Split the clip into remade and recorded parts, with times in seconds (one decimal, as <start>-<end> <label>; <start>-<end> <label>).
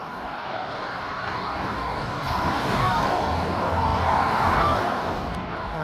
0.0-5.8 remade